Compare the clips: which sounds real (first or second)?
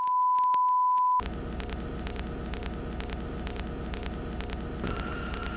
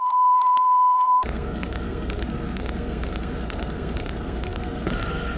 first